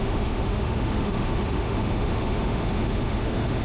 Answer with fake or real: fake